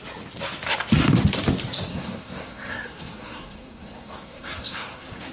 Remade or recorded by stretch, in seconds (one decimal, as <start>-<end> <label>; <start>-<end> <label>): 0.0-1.9 recorded; 1.9-5.3 remade